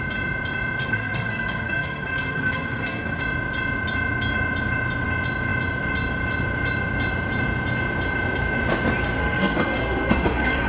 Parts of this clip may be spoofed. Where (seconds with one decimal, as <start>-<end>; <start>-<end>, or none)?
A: 0.8-3.2; 9.2-10.7